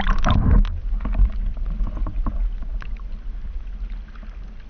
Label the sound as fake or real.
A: real